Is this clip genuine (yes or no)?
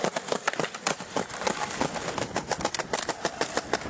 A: yes